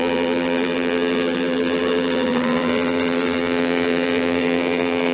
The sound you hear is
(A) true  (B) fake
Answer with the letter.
B